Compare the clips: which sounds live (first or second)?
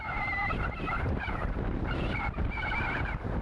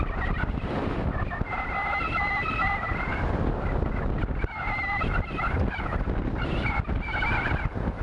second